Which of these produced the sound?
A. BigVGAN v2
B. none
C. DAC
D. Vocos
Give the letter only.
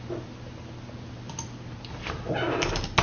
B